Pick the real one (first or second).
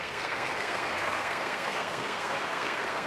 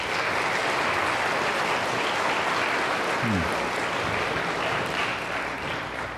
second